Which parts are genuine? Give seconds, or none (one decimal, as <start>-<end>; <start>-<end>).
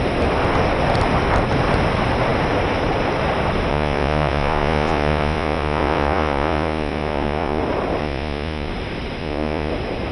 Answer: 0.0-3.7; 7.6-8.0; 8.7-9.2; 9.7-10.1